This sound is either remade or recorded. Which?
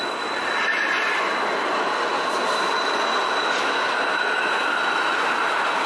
recorded